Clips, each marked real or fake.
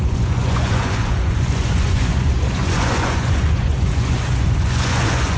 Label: fake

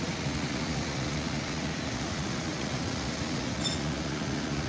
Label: fake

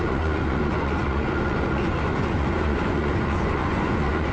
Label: fake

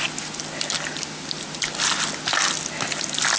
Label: real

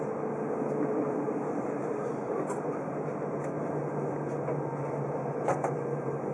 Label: real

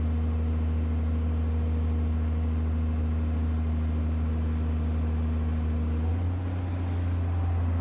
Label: real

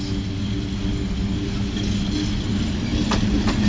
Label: real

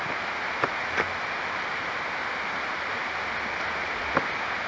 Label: real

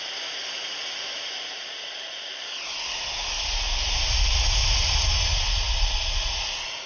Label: real